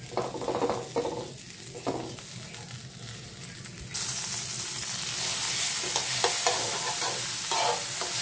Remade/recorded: recorded